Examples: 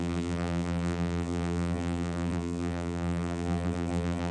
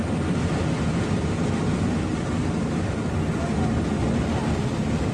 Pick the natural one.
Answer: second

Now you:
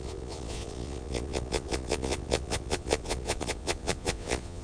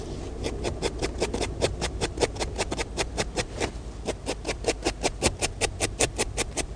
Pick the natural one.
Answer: second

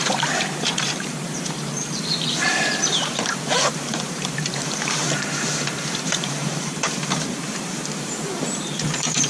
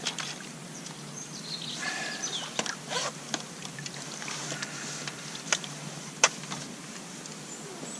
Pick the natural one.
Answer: second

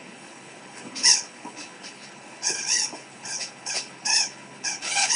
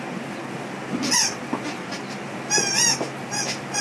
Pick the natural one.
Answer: second